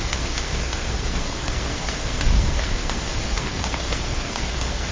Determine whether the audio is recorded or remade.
remade